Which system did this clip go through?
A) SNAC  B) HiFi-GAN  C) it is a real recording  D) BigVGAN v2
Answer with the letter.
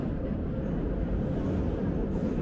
C